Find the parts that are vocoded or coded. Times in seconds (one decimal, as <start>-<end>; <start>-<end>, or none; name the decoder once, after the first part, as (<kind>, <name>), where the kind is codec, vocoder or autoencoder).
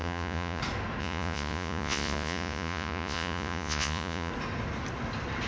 0.0-0.6 (vocoder, Vocos); 1.0-4.3